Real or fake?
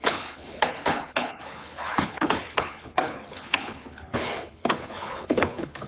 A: fake